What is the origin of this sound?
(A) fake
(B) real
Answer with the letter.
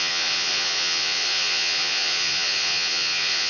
A